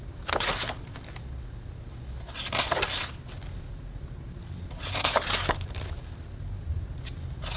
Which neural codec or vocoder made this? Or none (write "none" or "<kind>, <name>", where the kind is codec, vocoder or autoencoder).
none